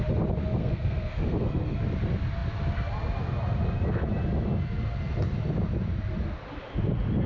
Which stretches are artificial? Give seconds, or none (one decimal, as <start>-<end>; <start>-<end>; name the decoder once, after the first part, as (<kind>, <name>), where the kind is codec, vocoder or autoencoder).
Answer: 0.6-1.8 (codec, SNAC)